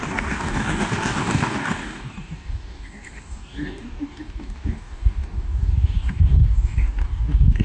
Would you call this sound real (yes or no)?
no